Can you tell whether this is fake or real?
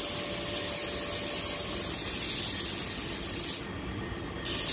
real